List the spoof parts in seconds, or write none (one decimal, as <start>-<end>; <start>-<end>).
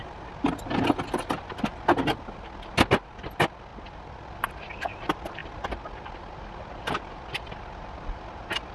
none